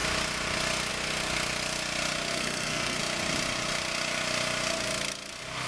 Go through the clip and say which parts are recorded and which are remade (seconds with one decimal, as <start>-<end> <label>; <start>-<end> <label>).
0.0-2.3 recorded; 2.3-3.0 remade; 3.0-5.7 recorded